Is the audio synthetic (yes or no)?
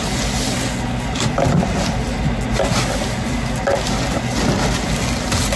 no